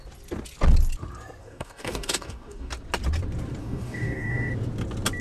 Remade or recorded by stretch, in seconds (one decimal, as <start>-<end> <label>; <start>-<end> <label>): 0.0-1.4 recorded; 1.4-2.7 remade; 2.7-3.6 recorded; 3.6-4.5 remade; 4.5-5.2 recorded